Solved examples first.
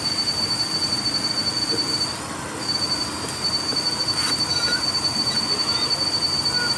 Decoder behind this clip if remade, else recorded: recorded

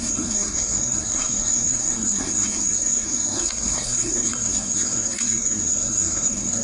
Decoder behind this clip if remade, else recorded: remade, codec, SNAC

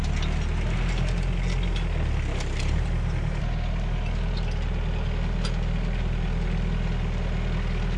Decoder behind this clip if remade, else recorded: recorded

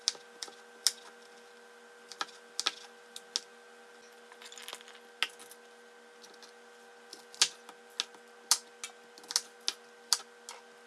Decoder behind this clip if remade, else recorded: recorded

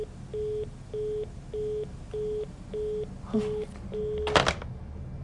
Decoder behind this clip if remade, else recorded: recorded